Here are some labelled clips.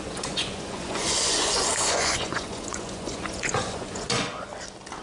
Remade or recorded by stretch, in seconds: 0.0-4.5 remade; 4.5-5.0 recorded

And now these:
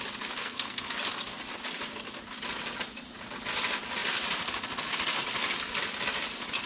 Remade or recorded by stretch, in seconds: 0.0-0.4 recorded; 0.4-0.9 remade; 0.9-6.7 recorded

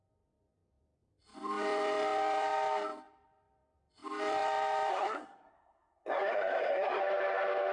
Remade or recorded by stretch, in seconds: 0.0-4.9 recorded; 4.9-7.0 remade; 7.0-7.7 recorded

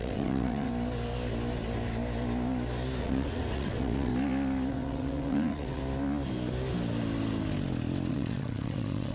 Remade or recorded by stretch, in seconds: 0.0-0.7 remade; 0.7-3.0 recorded; 3.0-4.1 remade; 4.1-4.7 recorded; 4.7-5.8 remade; 5.8-8.1 recorded; 8.1-9.1 remade

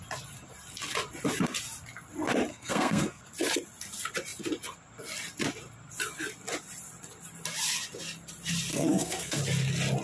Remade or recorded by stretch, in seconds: 0.0-2.5 recorded; 2.5-3.2 remade; 3.2-8.7 recorded; 8.7-9.4 remade; 9.4-10.0 recorded

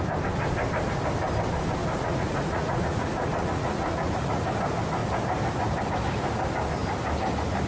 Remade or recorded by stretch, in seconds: 0.0-1.8 recorded; 1.8-4.5 remade; 4.5-7.7 recorded